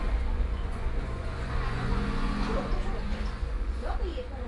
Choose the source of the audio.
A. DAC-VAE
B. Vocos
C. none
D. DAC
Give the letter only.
B